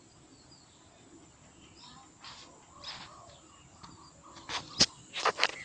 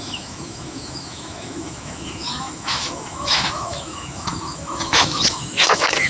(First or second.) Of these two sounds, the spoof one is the second